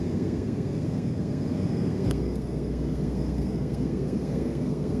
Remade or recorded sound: remade